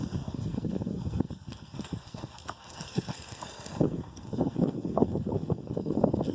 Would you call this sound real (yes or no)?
no